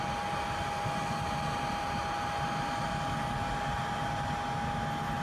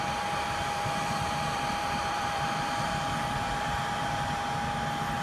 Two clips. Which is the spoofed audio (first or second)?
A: second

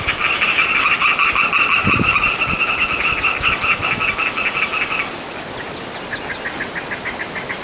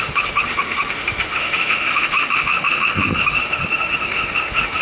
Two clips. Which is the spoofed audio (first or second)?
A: second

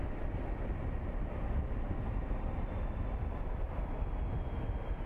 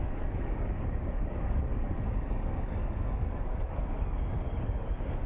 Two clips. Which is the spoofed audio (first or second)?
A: second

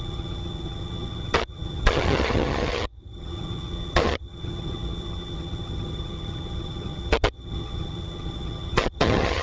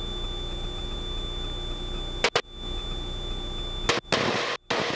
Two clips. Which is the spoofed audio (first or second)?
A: first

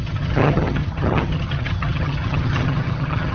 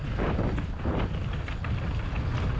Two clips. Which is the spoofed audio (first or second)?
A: first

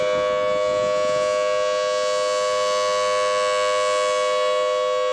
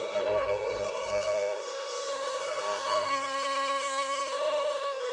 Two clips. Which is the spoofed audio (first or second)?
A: second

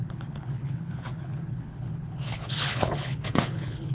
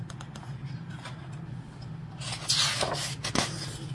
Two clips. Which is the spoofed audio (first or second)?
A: first